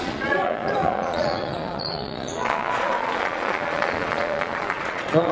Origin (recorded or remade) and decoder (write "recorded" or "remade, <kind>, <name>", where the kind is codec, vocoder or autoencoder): remade, vocoder, Vocos